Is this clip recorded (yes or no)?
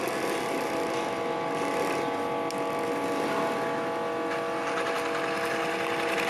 yes